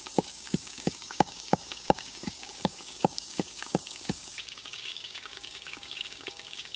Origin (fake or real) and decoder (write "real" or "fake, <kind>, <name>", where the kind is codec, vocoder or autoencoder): fake, codec, DAC